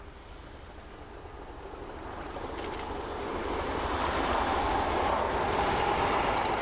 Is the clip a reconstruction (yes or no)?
no